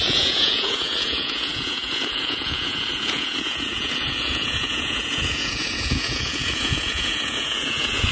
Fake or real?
fake